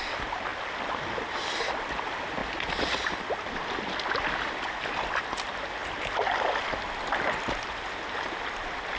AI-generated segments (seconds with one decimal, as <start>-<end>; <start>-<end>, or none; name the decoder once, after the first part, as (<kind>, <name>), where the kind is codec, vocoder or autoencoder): 0.5-1.7 (vocoder, BigVGAN v2); 2.4-3.3

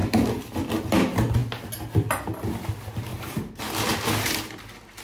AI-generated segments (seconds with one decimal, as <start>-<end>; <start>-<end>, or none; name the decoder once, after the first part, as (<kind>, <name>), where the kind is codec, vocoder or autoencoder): 0.0-0.7 (vocoder, BigVGAN v2)